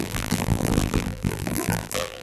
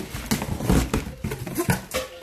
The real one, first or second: second